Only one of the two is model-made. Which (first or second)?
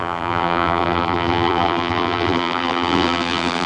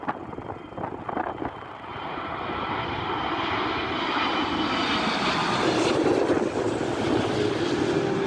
first